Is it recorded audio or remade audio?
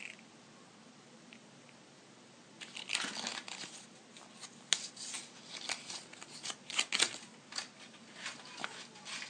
recorded